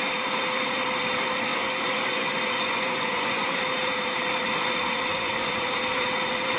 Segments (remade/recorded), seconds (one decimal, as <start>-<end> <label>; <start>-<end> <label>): 0.0-1.5 recorded; 1.5-3.6 remade; 3.6-5.1 recorded; 5.1-5.7 remade; 5.7-6.6 recorded